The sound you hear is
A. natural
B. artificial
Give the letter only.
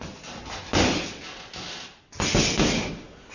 A